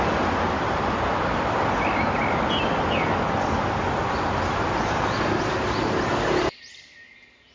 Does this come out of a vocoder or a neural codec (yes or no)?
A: no